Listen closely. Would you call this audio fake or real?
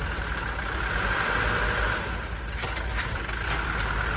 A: real